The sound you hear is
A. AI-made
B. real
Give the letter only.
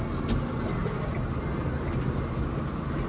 B